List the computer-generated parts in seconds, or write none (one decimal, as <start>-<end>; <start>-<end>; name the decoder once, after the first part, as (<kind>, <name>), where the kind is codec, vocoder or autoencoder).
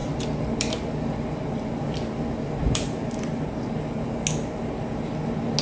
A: 0.0-3.4 (vocoder, BigVGAN v2)